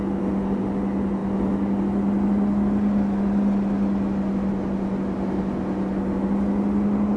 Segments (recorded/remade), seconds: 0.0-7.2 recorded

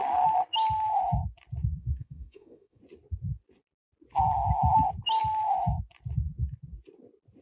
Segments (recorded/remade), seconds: 0.0-1.8 recorded; 1.8-2.8 remade; 2.8-7.4 recorded

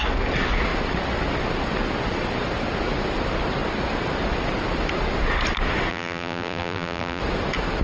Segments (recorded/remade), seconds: 0.0-5.9 recorded; 5.9-7.2 remade; 7.2-7.8 recorded

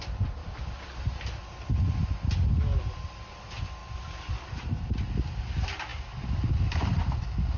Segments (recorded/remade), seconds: 0.0-7.6 recorded

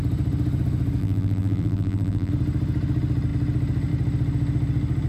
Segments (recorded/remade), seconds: 0.0-1.0 recorded; 1.0-2.3 remade; 2.3-5.1 recorded

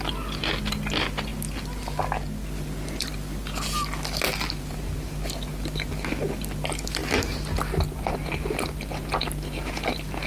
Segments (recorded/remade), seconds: 0.0-10.3 recorded

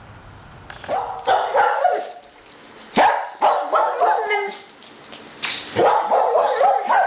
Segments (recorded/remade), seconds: 0.0-7.1 recorded

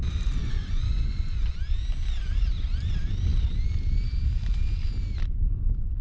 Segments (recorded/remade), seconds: 0.0-0.4 recorded; 0.4-1.5 remade; 1.5-6.0 recorded